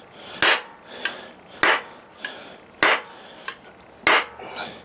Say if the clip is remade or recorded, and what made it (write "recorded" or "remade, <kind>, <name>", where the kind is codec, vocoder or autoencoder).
recorded